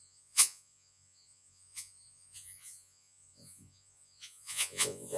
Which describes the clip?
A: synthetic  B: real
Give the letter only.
A